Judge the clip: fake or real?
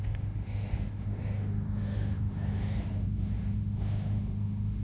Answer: fake